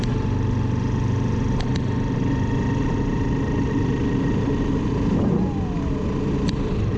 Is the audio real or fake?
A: real